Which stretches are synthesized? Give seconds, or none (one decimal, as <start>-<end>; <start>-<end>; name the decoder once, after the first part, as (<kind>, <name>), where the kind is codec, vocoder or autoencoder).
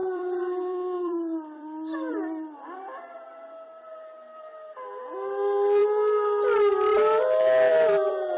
0.0-3.3 (vocoder, BigVGAN v2)